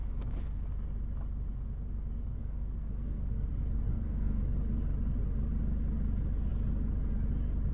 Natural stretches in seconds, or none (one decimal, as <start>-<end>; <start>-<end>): 0.0-2.4; 3.5-3.9; 4.4-7.7